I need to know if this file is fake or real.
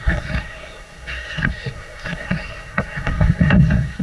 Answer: fake